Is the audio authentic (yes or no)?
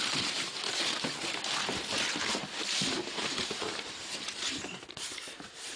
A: no